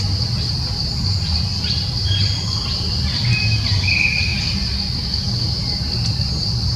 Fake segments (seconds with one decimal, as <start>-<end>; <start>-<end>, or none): none